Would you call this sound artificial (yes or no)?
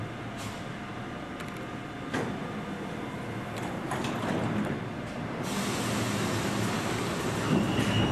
no